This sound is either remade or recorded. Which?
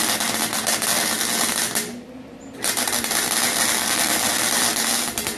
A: recorded